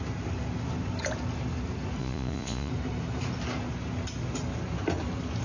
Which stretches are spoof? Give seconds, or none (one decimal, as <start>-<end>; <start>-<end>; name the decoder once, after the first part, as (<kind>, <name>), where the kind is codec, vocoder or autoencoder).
2.0-2.7 (vocoder, Vocos)